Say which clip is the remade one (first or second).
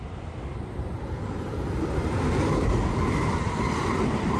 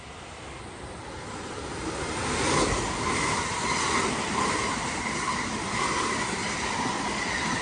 first